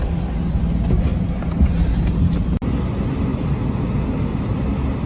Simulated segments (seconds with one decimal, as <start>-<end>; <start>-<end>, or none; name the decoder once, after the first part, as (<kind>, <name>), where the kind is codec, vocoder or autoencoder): none